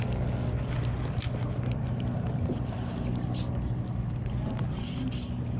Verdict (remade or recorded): recorded